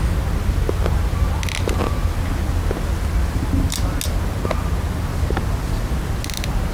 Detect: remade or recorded recorded